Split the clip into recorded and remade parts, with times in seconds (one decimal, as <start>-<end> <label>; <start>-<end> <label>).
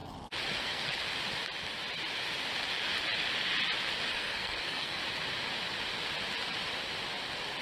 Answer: 0.0-0.6 recorded; 0.6-1.0 remade; 1.0-4.1 recorded; 4.1-5.0 remade; 5.0-7.6 recorded